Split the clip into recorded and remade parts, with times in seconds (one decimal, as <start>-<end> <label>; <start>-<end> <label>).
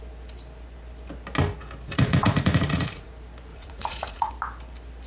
0.0-1.9 recorded; 1.9-3.1 remade; 3.1-3.5 recorded; 3.5-4.3 remade; 4.3-5.1 recorded